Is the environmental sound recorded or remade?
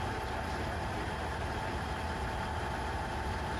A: recorded